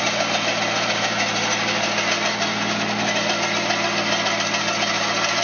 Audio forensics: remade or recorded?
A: recorded